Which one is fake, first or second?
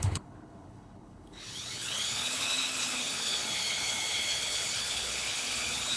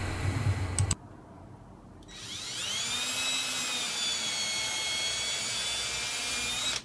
first